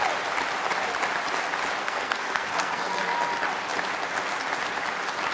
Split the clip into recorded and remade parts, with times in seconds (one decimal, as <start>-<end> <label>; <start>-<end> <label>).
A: 0.0-1.8 recorded; 1.8-3.0 remade; 3.0-5.3 recorded